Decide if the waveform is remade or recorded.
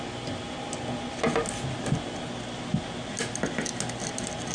recorded